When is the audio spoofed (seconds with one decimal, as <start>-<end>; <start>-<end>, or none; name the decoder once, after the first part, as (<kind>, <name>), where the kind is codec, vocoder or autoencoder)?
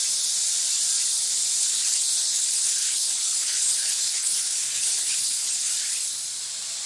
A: 1.6-5.7 (codec, HILCodec)